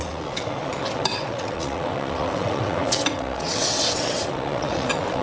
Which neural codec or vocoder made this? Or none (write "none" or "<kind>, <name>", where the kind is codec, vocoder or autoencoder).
vocoder, WaveNeXt